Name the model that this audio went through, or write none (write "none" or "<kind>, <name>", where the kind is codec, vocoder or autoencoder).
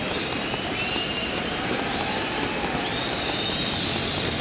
vocoder, BigVGAN v2